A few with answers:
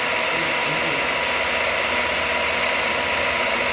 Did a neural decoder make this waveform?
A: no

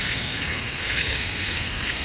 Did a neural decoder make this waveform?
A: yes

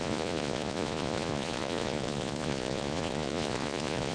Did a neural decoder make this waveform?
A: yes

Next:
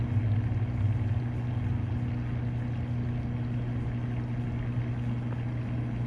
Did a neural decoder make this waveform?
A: no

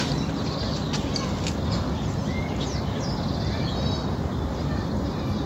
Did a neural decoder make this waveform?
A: no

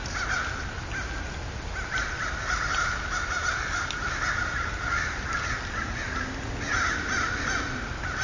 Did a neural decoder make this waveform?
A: no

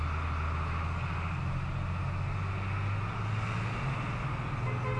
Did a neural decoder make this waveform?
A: no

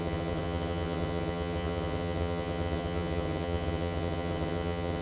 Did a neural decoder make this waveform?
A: yes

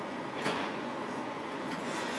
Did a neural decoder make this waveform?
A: yes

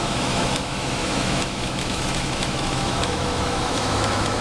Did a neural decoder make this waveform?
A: yes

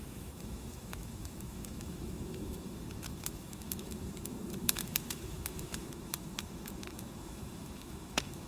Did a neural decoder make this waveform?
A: yes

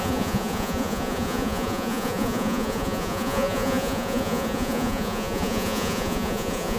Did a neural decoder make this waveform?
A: yes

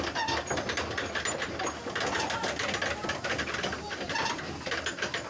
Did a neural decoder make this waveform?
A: no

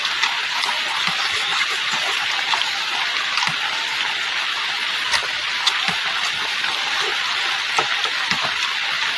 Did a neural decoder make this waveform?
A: no